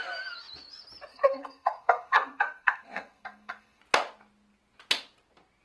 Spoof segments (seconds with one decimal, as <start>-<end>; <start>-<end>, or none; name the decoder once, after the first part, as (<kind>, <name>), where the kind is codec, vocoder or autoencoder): 1.1-3.8 (codec, SNAC)